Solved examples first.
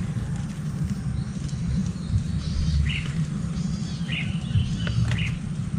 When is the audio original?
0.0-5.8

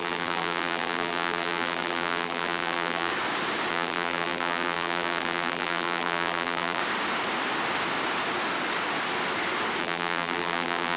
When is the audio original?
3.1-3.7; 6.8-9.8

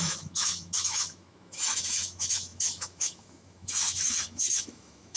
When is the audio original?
none

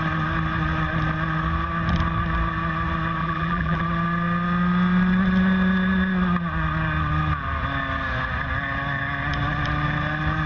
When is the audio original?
0.0-3.2; 3.8-10.5

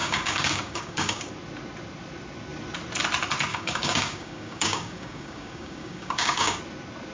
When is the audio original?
1.3-3.5; 6.6-7.1

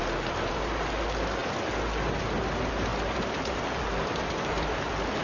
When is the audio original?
0.0-5.2